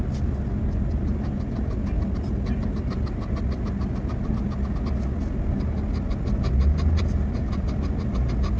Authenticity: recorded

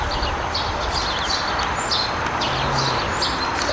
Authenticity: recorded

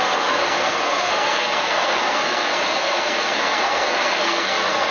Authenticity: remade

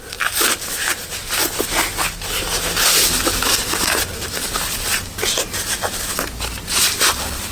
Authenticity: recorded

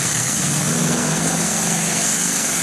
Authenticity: remade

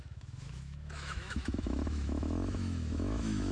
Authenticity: remade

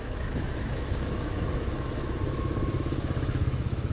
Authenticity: remade